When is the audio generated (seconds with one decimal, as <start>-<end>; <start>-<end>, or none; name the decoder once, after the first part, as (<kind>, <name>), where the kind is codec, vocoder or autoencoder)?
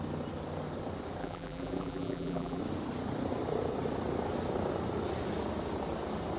1.2-2.6 (vocoder, BigVGAN v2)